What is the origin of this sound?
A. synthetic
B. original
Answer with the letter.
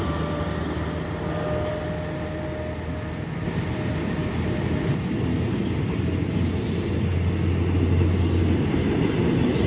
B